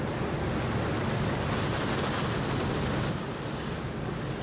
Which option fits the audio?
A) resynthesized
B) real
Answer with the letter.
B